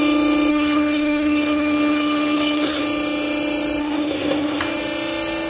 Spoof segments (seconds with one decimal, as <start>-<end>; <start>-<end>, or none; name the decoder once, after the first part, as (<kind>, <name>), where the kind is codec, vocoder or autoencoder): 0.5-2.8 (codec, SNAC); 3.8-4.6